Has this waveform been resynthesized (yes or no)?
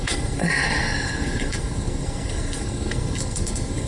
yes